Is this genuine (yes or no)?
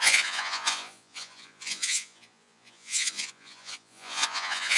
no